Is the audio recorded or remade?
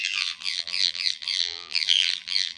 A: remade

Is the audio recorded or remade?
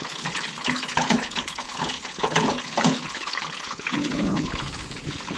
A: remade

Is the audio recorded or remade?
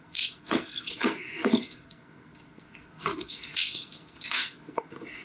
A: remade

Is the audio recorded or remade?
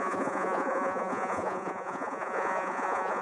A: remade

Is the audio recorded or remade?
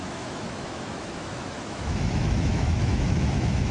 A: remade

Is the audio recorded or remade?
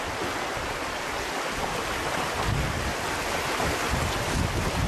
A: recorded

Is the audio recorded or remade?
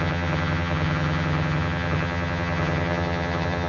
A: remade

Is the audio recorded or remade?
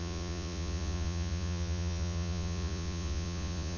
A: remade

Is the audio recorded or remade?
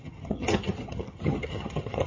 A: remade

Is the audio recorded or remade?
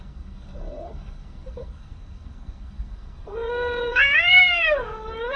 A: remade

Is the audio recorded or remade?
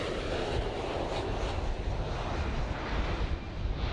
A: recorded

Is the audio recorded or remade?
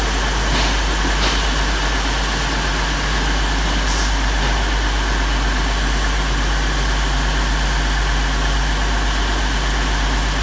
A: recorded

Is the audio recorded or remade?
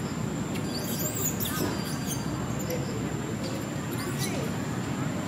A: recorded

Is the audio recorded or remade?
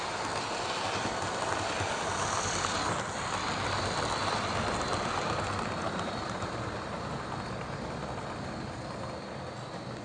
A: recorded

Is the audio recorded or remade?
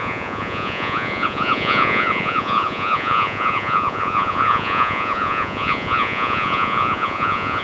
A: remade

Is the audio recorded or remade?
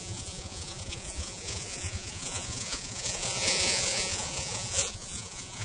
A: remade